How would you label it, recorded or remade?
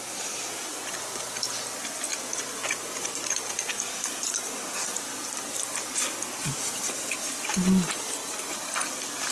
recorded